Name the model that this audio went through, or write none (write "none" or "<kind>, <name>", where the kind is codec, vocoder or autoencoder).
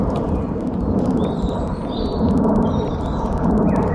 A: vocoder, BigVGAN v2